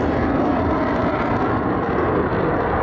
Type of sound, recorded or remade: recorded